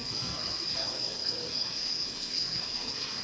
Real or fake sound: fake